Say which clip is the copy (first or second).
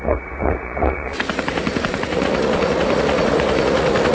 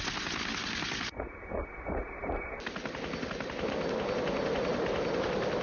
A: first